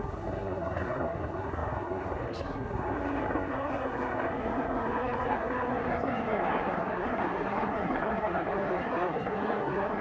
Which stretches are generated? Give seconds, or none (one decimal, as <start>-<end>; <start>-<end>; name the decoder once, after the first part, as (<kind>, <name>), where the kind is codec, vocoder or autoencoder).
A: 0.0-10.0 (codec, SNAC)